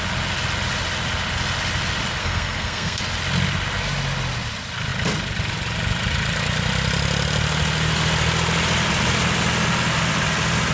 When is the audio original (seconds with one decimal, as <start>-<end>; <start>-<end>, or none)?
0.0-2.2; 3.0-10.7